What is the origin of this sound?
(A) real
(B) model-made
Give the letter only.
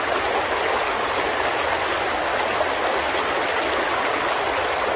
A